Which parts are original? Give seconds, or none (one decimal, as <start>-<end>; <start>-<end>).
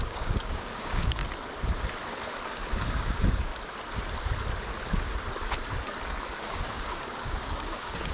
1.2-2.5; 3.5-6.4